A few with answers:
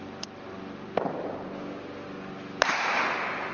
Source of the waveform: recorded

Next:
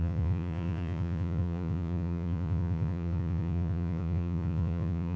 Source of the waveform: remade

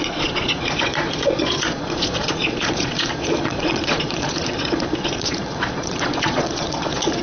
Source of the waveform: remade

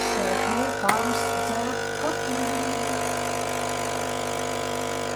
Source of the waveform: remade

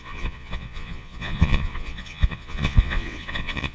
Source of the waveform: remade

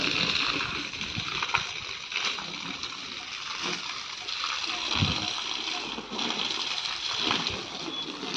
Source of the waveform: recorded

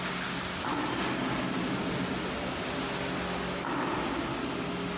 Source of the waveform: recorded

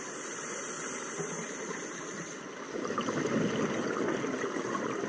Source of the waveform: recorded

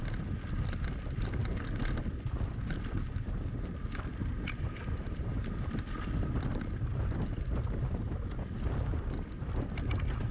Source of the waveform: recorded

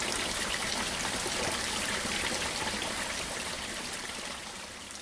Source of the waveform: recorded